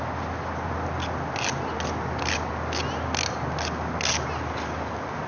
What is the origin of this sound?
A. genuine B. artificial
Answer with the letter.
A